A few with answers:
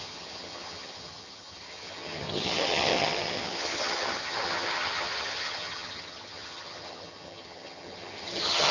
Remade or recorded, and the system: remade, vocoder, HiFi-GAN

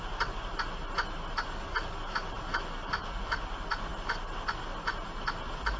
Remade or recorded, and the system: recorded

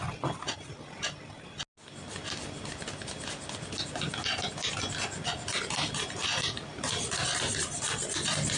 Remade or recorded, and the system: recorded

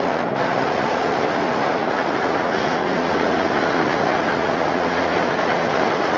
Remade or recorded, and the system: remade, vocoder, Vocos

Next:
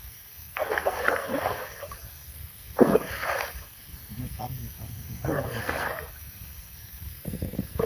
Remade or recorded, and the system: remade, codec, SNAC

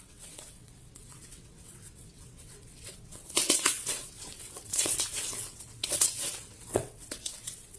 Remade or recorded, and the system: remade, vocoder, WaveNeXt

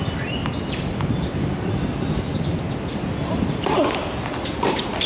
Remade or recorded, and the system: recorded